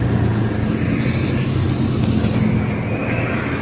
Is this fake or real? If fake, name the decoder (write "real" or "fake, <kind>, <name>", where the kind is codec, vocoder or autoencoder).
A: real